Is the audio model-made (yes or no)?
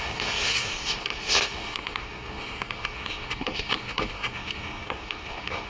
yes